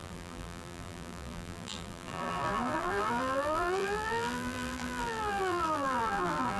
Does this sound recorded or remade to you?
remade